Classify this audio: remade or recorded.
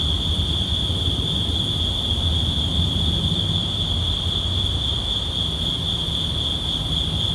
recorded